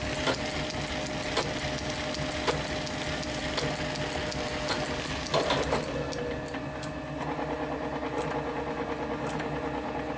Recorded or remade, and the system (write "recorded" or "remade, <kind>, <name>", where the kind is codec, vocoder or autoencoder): recorded